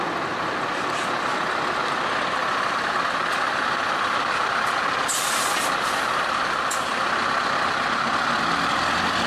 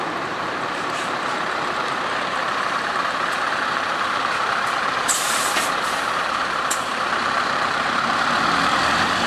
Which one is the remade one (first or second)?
second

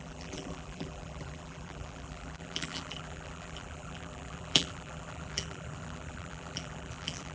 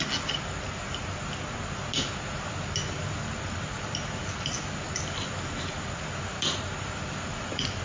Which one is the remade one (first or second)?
first